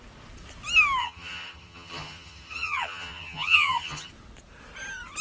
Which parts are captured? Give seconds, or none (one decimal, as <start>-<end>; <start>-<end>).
0.0-1.0; 4.1-5.2

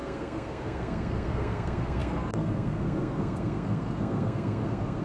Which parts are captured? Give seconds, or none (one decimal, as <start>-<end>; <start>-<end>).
none

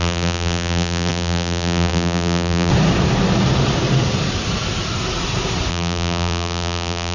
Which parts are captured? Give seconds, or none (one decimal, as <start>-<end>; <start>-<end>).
2.7-5.7

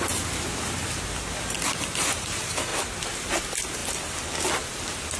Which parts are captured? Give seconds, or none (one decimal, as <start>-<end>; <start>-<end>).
0.0-5.2

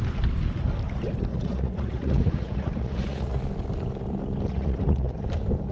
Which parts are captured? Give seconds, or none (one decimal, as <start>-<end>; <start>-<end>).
0.0-1.3; 3.4-4.5; 5.3-5.7

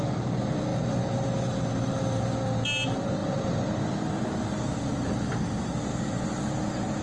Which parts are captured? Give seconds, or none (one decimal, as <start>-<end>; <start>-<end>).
0.0-7.0

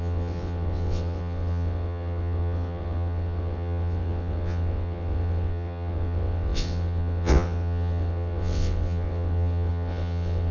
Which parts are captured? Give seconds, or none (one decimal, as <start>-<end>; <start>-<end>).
none